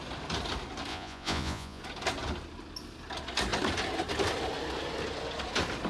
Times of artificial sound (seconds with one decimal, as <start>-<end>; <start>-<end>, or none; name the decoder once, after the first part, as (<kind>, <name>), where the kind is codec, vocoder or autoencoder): 0.9-1.8 (vocoder, Vocos)